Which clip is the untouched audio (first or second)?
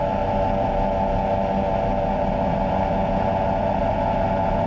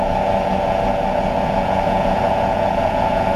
first